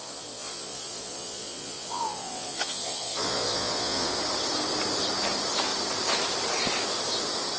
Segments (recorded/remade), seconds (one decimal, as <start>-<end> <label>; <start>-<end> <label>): 0.0-4.1 remade; 4.1-7.6 recorded